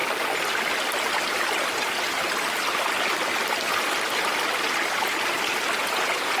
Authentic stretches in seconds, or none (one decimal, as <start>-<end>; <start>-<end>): 0.0-5.8